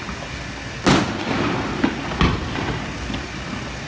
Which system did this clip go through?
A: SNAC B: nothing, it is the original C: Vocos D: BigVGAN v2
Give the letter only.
B